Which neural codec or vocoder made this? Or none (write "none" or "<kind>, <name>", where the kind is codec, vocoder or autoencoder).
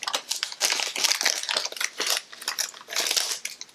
none